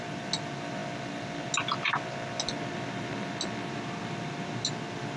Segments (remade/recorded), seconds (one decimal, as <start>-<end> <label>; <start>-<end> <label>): 0.0-5.2 recorded